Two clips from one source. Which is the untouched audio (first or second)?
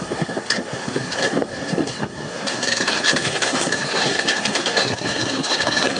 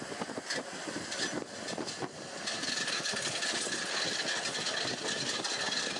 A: second